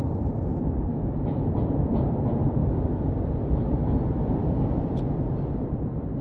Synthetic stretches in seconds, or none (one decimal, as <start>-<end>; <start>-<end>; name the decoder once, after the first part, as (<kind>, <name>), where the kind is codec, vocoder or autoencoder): 0.9-1.5 (autoencoder, DAC-VAE); 4.4-4.9